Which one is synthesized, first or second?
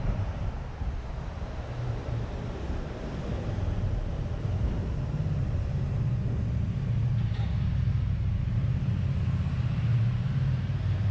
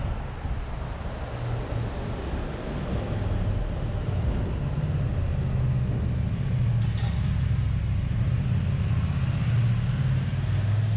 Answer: first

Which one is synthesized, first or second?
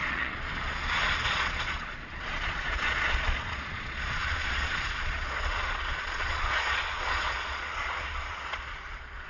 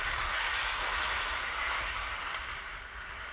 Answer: first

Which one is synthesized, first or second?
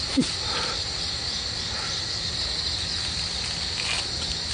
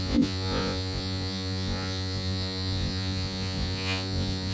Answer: second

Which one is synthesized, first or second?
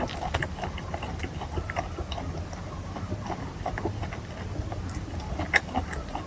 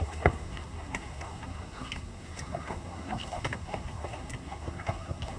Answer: second